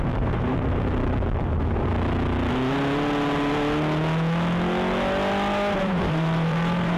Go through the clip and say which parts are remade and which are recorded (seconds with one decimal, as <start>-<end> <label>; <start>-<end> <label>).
0.0-1.9 remade; 1.9-5.8 recorded; 5.8-7.0 remade